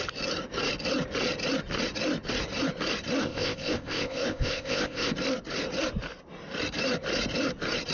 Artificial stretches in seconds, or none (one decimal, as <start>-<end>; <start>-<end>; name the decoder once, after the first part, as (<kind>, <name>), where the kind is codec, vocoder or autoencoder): 3.2-5.1 (codec, ZipCodec)